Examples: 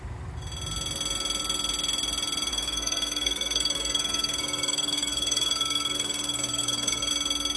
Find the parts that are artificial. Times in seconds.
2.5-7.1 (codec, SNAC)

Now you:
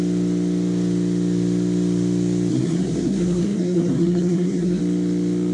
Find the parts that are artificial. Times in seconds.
2.5-4.8 (codec, SNAC)

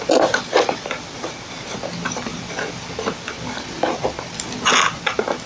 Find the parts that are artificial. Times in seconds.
none

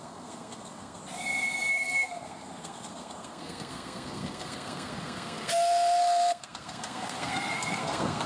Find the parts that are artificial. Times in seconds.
0.0-1.0 (codec, SNAC); 1.7-8.3

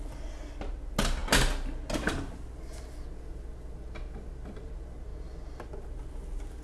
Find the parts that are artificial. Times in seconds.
none

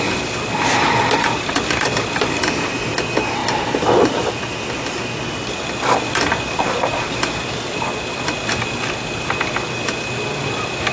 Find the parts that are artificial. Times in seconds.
none

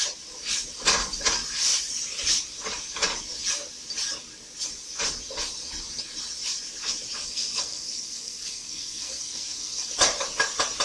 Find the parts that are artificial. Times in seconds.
7.2-9.9 (codec, SNAC)

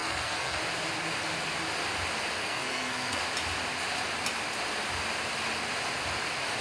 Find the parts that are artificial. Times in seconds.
0.0-0.6 (codec, SNAC); 2.4-3.2